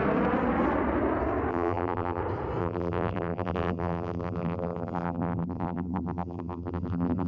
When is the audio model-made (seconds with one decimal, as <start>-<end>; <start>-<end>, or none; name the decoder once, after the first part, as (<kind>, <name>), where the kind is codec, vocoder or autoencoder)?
1.5-2.2 (vocoder, BigVGAN v2); 2.6-7.3

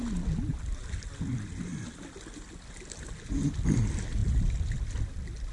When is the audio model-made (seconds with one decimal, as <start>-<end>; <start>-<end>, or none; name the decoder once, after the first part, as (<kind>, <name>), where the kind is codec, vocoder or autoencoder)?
none

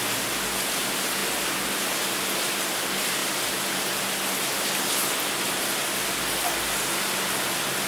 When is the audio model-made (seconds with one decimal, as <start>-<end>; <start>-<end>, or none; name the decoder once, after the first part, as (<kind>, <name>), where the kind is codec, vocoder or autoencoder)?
none

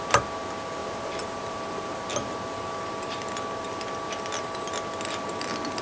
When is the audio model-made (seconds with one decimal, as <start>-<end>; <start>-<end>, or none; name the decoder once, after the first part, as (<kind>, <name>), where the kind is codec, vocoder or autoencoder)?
0.8-2.0 (vocoder, BigVGAN v2)

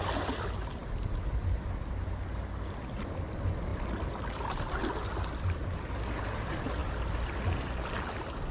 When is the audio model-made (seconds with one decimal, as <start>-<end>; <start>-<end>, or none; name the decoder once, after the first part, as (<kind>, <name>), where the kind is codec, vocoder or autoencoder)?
none

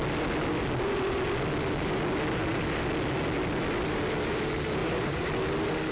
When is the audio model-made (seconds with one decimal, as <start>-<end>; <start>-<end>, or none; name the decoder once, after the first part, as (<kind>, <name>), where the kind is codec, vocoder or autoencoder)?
4.8-5.3 (vocoder, BigVGAN v2)

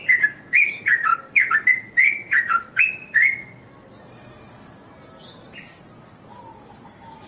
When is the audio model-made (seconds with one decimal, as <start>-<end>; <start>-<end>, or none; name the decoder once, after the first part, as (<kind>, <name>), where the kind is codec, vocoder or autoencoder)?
1.1-4.0 (vocoder, BigVGAN v2)

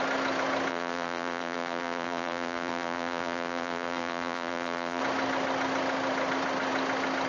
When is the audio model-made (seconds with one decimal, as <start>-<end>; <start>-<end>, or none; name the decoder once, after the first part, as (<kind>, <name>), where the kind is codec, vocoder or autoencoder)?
0.7-5.0 (vocoder, BigVGAN v2)